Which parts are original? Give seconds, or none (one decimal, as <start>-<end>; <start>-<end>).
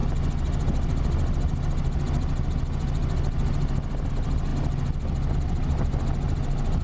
0.0-6.8